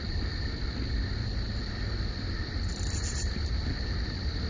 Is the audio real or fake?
real